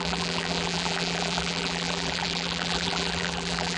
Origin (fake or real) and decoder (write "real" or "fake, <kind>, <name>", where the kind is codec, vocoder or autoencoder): fake, vocoder, BigVGAN v2